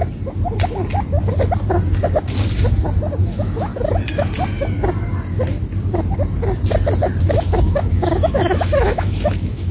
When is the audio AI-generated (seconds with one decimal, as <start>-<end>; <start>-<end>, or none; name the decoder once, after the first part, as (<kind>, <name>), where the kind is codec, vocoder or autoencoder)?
3.2-3.7 (autoencoder, DAC-VAE); 7.2-9.7